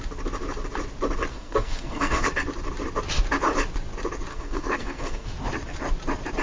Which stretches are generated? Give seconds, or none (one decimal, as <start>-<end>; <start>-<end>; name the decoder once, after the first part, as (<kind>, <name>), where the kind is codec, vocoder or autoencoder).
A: 1.3-2.3 (codec, SNAC); 4.3-5.3